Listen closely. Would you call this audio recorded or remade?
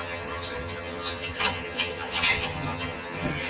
remade